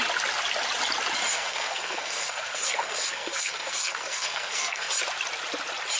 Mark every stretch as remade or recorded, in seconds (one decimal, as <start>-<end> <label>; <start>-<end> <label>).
0.0-1.3 recorded; 1.3-4.9 remade; 4.9-6.0 recorded